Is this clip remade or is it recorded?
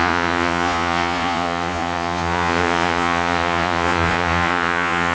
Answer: remade